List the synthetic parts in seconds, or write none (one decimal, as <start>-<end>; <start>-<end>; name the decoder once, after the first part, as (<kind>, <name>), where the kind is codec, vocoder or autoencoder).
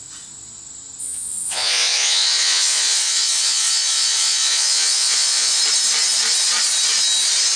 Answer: 1.0-5.6 (vocoder, Vocos)